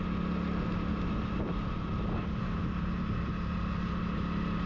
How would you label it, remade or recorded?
recorded